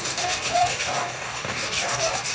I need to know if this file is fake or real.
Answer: fake